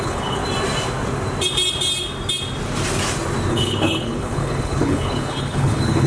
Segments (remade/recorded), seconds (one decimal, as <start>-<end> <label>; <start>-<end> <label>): 0.0-0.4 remade; 0.4-3.5 recorded; 3.5-6.1 remade